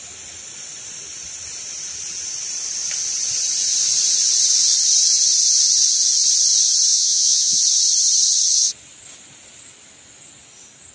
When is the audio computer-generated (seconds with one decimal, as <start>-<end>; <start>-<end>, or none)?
6.9-7.6